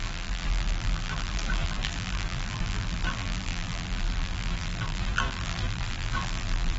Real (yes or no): no